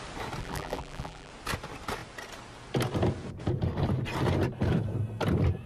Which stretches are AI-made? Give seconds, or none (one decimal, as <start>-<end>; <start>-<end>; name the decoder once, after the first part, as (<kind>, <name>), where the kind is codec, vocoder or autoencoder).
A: 0.4-1.3 (vocoder, BigVGAN v2)